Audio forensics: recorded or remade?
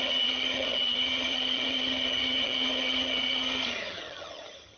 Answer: remade